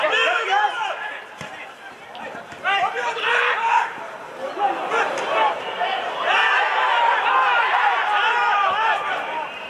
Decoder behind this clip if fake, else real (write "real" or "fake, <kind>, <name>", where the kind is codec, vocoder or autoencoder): fake, vocoder, BigVGAN v2